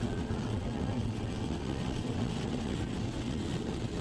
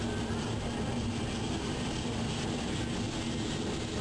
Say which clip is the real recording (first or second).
second